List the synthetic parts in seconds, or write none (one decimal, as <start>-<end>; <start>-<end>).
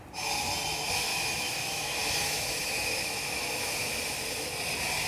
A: 1.1-3.9